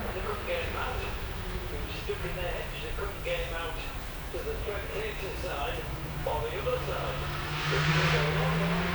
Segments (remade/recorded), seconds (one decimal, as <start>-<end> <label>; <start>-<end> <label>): 0.0-0.6 recorded; 0.6-1.7 remade; 1.7-4.0 recorded; 4.0-7.9 remade; 7.9-8.9 recorded

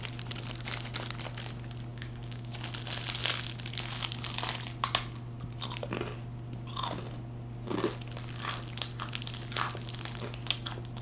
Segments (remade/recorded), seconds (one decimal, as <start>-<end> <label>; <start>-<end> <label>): 0.0-1.9 recorded; 1.9-2.5 remade; 2.5-11.0 recorded

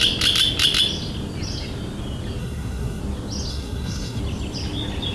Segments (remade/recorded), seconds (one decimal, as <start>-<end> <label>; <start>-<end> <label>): 0.0-2.4 recorded; 2.4-3.0 remade; 3.0-3.5 recorded; 3.5-4.2 remade; 4.2-5.1 recorded

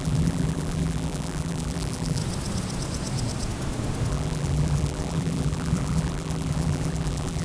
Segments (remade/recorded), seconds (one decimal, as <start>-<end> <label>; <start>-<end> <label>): 0.0-2.2 remade; 2.2-4.1 recorded; 4.1-7.4 remade